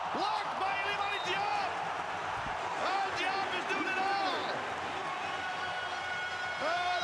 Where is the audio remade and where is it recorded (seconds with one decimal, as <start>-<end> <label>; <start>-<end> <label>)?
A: 0.0-7.0 recorded

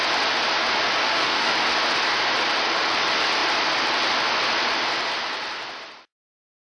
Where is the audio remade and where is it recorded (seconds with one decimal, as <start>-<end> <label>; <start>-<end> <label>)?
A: 0.0-1.0 recorded; 1.0-1.5 remade; 1.5-6.6 recorded

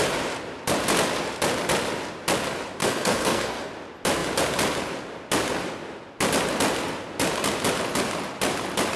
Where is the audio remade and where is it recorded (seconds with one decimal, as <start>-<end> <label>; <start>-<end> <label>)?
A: 0.0-2.8 recorded; 2.8-3.7 remade; 3.7-9.0 recorded

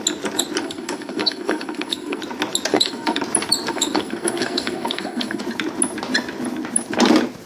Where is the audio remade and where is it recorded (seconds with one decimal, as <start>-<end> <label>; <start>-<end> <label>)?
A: 0.0-0.6 recorded; 0.6-2.2 remade; 2.2-2.7 recorded; 2.7-3.2 remade; 3.2-3.7 recorded; 3.7-5.4 remade; 5.4-7.5 recorded

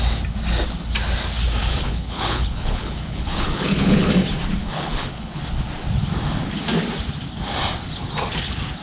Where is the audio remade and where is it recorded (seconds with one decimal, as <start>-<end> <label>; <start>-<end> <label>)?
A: 0.0-1.6 recorded; 1.6-4.1 remade; 4.1-4.6 recorded; 4.6-5.4 remade; 5.4-8.8 recorded

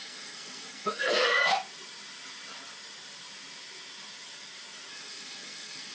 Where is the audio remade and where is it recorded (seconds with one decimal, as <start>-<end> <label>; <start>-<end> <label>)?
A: 0.0-1.4 remade; 1.4-4.9 recorded; 4.9-5.9 remade